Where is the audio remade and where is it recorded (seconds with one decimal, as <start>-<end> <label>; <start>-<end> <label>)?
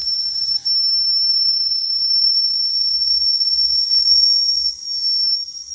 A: 0.0-0.5 remade; 0.5-1.3 recorded; 1.3-4.7 remade; 4.7-5.7 recorded